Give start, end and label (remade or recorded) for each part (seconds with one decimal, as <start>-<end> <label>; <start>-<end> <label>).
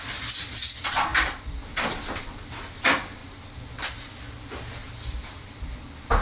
0.0-3.2 recorded; 3.2-3.7 remade; 3.7-4.8 recorded; 4.8-5.4 remade; 5.4-6.2 recorded